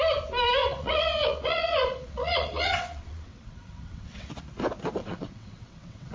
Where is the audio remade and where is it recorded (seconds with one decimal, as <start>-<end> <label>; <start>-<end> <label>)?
0.0-0.6 recorded; 0.6-4.3 remade; 4.3-5.0 recorded; 5.0-6.1 remade

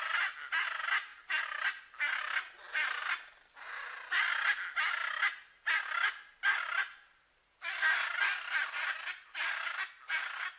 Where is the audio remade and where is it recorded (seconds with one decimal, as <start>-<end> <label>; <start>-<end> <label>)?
0.0-10.6 recorded